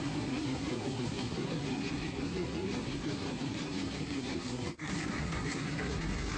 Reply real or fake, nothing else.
fake